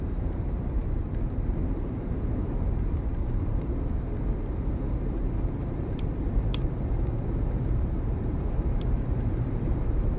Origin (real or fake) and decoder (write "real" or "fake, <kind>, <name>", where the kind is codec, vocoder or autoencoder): fake, vocoder, BigVGAN v2